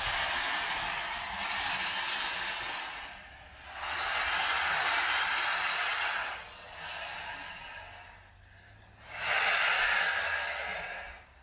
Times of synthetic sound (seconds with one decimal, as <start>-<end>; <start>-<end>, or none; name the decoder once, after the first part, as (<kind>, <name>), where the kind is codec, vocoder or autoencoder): none